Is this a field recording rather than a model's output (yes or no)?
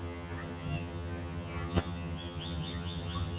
no